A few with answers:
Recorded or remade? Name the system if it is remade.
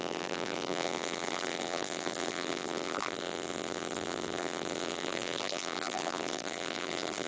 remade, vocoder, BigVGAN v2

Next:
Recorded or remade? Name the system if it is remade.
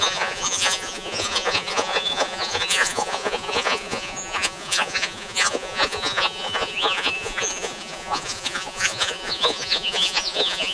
remade, vocoder, Vocos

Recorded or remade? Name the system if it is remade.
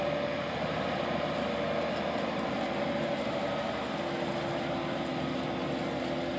recorded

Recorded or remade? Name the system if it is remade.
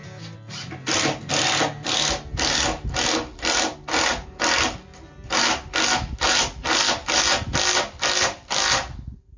recorded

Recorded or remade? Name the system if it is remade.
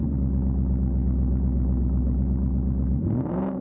recorded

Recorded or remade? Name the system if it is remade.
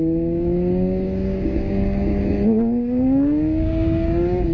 remade, codec, DAC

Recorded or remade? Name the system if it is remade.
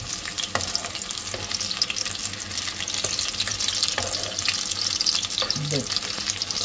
recorded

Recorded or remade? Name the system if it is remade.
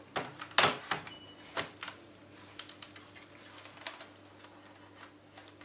recorded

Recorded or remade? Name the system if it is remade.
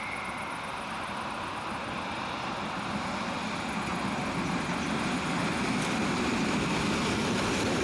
recorded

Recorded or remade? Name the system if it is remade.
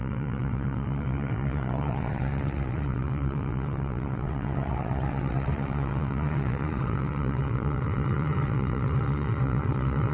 remade, vocoder, WaveNeXt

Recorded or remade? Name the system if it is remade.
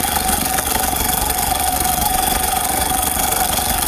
remade, codec, SNAC